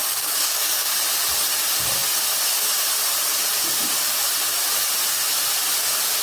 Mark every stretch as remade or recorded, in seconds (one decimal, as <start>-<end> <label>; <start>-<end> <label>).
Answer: 0.0-0.9 remade; 0.9-6.2 recorded